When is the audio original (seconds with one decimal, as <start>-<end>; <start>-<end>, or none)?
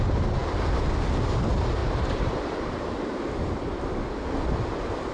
0.0-1.8; 3.2-5.1